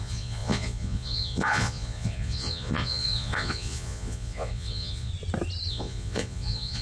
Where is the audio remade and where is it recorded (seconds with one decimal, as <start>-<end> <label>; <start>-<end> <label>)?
0.0-5.1 remade; 5.1-5.7 recorded; 5.7-6.8 remade